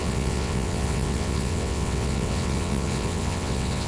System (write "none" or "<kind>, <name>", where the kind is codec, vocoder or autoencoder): vocoder, WaveNeXt